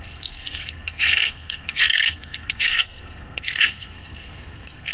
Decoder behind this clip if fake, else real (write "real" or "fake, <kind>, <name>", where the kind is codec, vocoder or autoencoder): fake, codec, SNAC